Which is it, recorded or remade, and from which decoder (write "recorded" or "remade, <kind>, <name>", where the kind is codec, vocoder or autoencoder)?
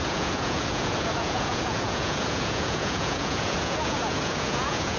remade, vocoder, Vocos